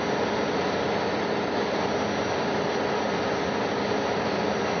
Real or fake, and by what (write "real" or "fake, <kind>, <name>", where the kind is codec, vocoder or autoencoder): real